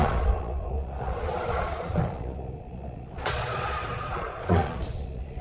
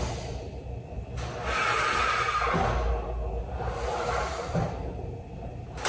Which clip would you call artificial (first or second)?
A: first